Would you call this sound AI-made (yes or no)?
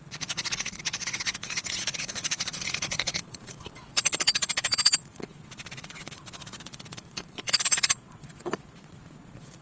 yes